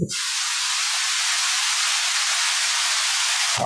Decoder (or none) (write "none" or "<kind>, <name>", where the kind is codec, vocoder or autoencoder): none